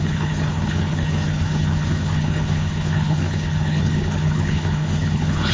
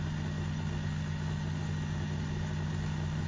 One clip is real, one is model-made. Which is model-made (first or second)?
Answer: first